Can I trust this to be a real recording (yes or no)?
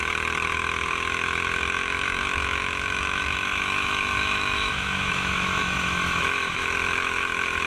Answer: no